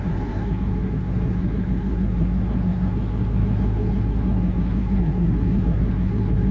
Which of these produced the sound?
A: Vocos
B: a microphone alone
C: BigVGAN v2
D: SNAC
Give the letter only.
D